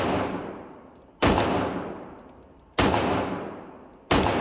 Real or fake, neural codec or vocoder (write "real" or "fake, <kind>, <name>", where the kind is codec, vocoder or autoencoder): real